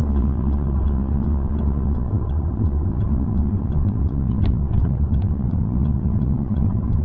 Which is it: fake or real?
fake